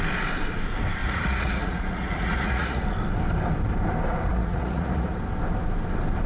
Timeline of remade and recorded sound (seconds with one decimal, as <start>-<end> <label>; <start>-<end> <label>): 0.0-1.0 recorded; 1.0-2.8 remade; 2.8-4.3 recorded; 4.3-5.1 remade; 5.1-6.3 recorded